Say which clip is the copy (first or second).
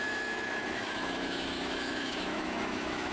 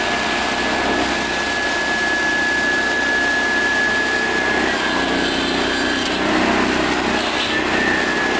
first